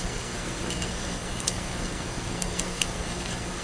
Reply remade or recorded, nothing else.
remade